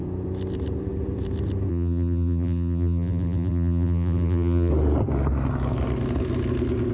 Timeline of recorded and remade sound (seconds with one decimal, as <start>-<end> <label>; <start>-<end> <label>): 0.0-1.7 recorded; 1.7-4.7 remade; 4.7-6.9 recorded